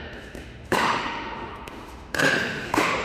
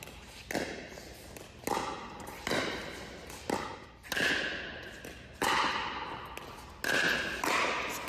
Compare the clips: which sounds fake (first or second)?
first